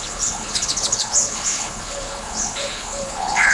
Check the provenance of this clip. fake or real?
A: fake